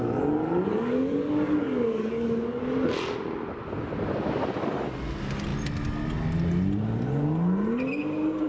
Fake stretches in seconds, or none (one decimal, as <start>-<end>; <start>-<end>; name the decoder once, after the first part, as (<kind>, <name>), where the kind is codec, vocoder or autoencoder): 0.7-2.6 (codec, DAC)